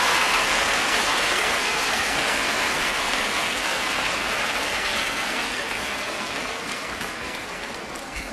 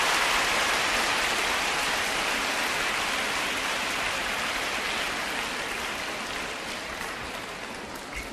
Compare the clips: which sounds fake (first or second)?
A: first